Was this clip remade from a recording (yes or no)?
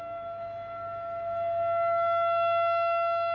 no